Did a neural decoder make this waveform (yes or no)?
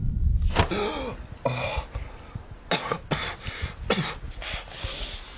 no